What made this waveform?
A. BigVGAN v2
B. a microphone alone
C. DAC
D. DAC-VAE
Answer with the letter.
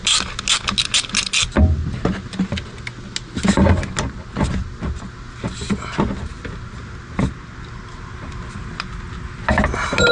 B